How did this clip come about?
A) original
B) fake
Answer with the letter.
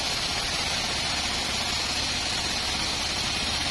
A